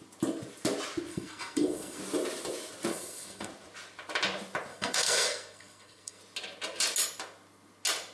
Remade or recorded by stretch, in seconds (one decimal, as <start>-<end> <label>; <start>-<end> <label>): 0.0-1.1 recorded; 1.1-2.0 remade; 2.0-2.9 recorded; 2.9-3.5 remade; 3.5-4.7 recorded; 4.7-6.2 remade; 6.2-8.1 recorded